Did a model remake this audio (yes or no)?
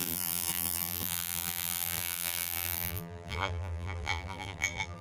yes